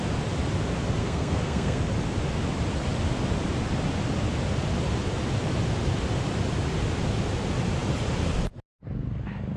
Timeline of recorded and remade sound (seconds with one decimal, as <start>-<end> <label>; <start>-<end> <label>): 0.0-1.0 recorded; 1.0-1.8 remade; 1.8-9.6 recorded